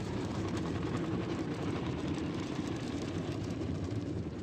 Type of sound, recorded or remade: remade